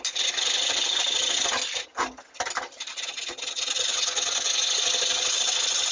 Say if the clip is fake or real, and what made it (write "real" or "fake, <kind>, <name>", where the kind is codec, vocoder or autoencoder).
real